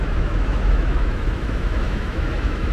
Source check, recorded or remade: remade